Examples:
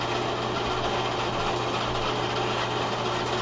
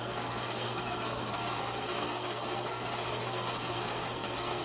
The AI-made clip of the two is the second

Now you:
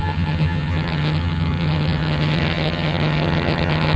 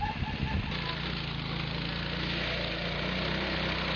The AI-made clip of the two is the first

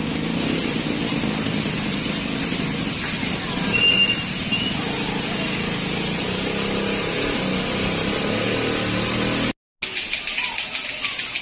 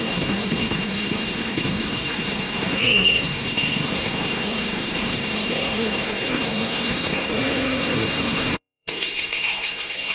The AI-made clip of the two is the second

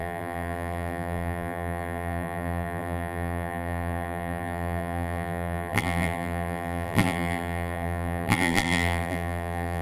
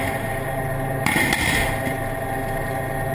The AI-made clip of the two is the first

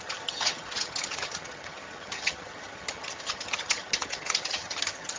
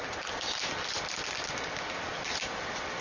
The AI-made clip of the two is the first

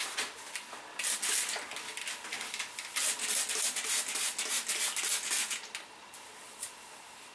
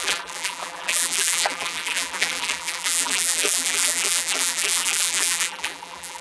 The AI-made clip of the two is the second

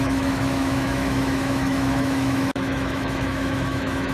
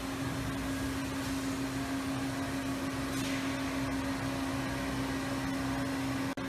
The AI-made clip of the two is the first